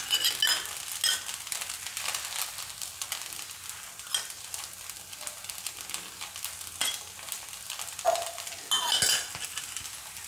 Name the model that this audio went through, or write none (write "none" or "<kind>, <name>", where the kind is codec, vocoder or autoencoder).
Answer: none